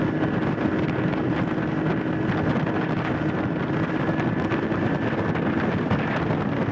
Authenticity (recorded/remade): recorded